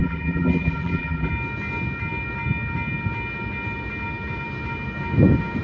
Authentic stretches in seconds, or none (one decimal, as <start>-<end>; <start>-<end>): 1.3-5.6

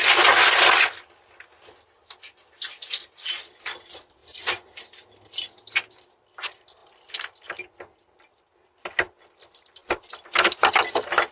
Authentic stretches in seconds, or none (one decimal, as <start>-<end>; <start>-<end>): 0.0-4.2; 5.2-11.3

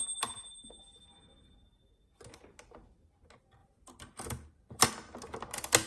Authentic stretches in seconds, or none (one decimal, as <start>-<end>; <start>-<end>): 0.0-3.6; 4.9-5.9

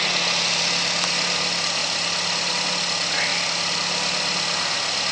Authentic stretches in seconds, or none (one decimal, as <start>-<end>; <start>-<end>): 0.0-1.8; 2.5-5.1

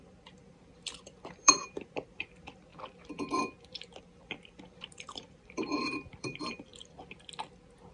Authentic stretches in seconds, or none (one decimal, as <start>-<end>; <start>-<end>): 2.7-4.0; 6.7-7.9

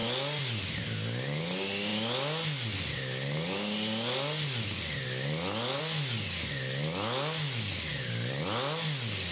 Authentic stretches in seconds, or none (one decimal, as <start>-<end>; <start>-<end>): 0.0-9.3